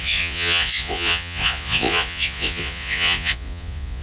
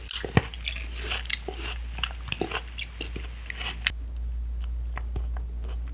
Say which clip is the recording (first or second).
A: second